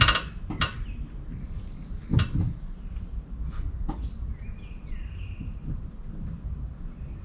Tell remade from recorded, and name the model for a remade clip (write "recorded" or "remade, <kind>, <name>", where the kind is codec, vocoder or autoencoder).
recorded